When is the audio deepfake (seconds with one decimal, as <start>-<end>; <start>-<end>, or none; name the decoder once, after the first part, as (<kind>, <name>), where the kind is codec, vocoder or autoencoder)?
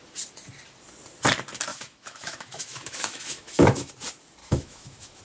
1.7-3.9 (autoencoder, DAC-VAE); 4.4-5.2